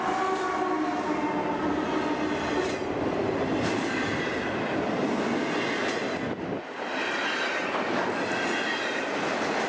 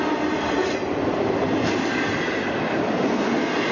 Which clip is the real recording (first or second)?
first